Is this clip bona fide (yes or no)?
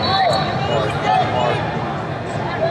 yes